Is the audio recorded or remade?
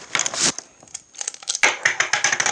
recorded